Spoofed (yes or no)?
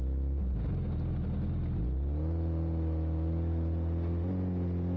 no